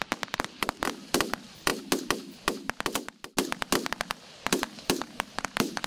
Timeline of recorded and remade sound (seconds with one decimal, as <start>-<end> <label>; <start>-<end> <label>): 0.0-1.7 remade; 1.7-4.5 recorded; 4.5-5.9 remade

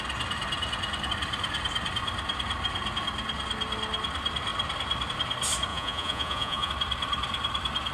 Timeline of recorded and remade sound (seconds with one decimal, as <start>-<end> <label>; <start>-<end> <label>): 0.0-5.7 recorded; 5.7-6.7 remade; 6.7-7.9 recorded

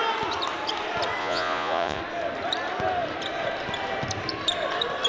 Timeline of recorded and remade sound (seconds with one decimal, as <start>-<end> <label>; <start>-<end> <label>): 0.0-1.2 recorded; 1.2-2.0 remade; 2.0-5.1 recorded